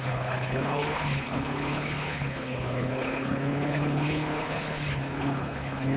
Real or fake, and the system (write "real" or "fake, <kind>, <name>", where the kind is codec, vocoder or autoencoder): fake, codec, HILCodec